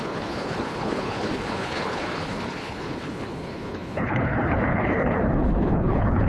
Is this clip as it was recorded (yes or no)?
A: no